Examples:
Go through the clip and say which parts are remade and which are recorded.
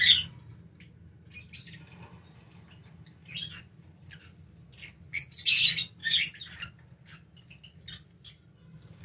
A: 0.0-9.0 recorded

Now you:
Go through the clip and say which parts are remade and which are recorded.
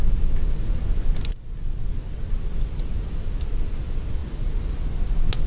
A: 0.0-5.5 recorded